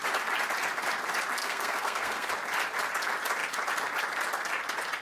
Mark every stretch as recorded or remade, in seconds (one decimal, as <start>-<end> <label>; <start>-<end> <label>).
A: 0.0-1.4 recorded; 1.4-2.3 remade; 2.3-5.0 recorded